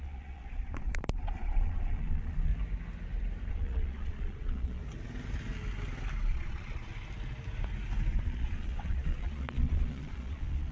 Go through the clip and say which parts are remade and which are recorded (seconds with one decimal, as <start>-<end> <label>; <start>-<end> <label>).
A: 0.0-2.5 remade; 2.5-3.5 recorded; 3.5-4.8 remade; 4.8-6.3 recorded; 6.3-6.9 remade; 6.9-8.1 recorded; 8.1-10.7 remade